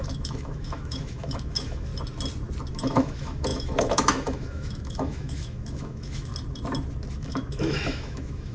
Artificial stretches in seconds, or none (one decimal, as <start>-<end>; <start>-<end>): 0.0-1.9; 2.7-6.3; 7.1-8.5